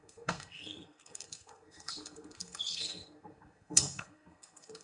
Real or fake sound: fake